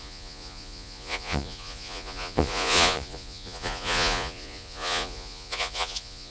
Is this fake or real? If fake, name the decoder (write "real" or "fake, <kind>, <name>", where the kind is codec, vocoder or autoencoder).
fake, vocoder, Vocos